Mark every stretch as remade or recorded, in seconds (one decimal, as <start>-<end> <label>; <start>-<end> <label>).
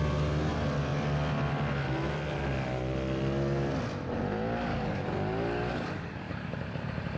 0.0-4.7 recorded; 4.7-6.6 remade; 6.6-7.2 recorded